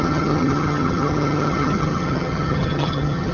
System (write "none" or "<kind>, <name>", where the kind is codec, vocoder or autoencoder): vocoder, HiFi-GAN